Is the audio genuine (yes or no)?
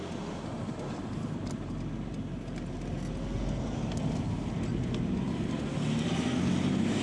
yes